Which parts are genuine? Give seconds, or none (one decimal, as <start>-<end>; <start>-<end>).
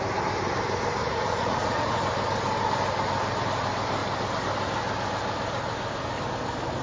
0.0-1.0; 2.0-6.8